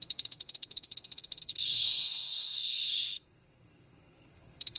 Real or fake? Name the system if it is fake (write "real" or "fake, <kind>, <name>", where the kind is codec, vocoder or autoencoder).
fake, codec, SNAC